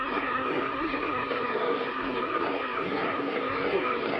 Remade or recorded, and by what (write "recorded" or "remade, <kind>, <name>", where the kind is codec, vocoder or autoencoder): remade, codec, SNAC